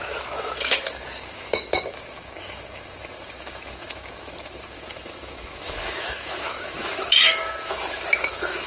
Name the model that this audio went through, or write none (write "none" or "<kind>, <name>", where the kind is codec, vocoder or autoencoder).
autoencoder, DAC-VAE